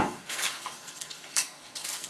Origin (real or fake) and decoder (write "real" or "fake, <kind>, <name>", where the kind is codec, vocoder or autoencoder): fake, codec, SNAC